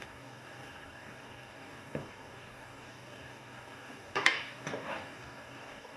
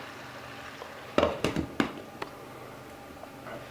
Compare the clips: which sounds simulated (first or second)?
first